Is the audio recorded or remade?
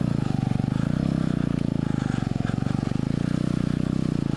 recorded